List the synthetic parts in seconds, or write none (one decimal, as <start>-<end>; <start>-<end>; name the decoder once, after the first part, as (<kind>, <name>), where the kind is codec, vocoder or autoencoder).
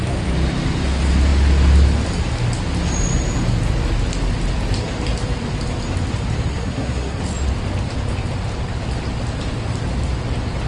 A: 6.5-7.2 (codec, SNAC)